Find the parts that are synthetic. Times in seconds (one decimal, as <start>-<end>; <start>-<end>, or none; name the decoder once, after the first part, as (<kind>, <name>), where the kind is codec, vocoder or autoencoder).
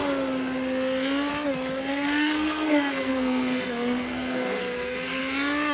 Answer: 1.9-5.2 (codec, SNAC)